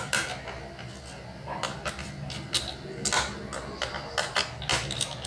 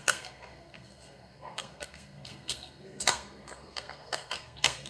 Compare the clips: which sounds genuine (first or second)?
first